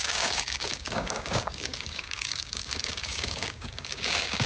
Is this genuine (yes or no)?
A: no